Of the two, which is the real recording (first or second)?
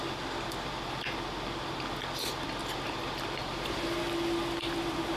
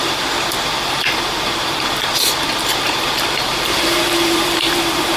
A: first